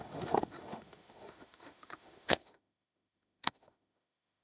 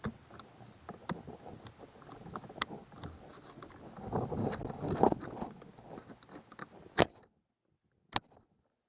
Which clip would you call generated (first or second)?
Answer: first